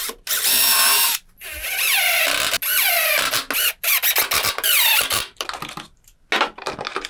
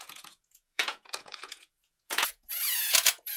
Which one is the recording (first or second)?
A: first